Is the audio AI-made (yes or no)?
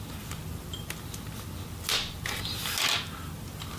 no